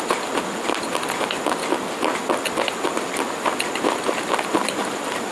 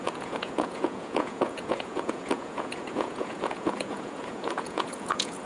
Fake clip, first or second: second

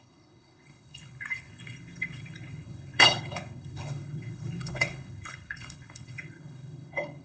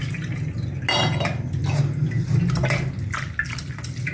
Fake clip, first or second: first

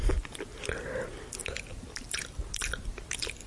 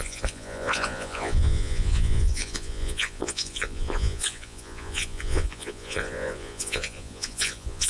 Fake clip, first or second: second